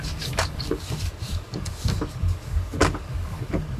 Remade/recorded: remade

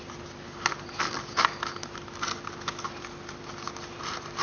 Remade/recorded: recorded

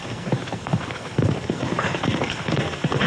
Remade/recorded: remade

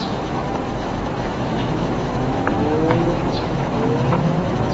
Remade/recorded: remade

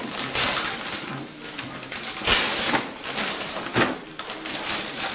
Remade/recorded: recorded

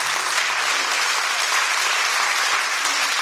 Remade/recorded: recorded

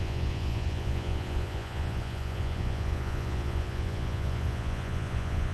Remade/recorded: remade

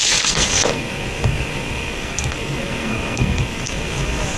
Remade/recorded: remade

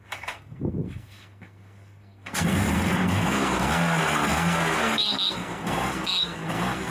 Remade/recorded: remade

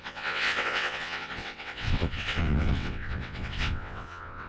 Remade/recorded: remade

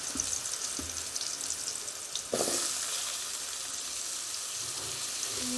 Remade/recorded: recorded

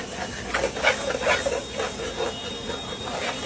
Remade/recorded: recorded